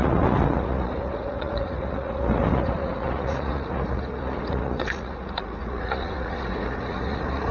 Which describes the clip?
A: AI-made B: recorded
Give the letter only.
A